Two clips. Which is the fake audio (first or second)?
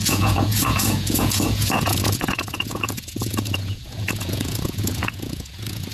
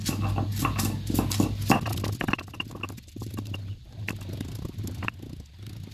first